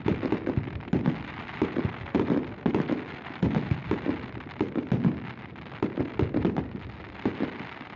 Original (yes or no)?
yes